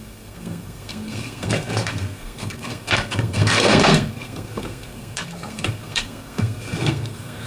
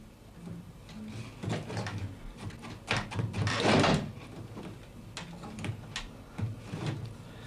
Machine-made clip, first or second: first